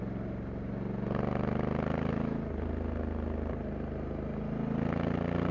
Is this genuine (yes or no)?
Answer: yes